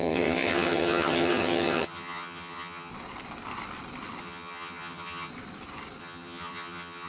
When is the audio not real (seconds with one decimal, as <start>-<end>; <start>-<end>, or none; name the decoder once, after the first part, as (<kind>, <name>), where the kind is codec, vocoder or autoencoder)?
0.0-2.9 (vocoder, HiFi-GAN); 4.2-5.3; 6.0-7.1